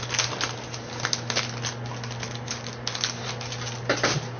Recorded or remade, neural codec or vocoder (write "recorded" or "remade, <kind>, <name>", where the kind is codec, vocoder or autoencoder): recorded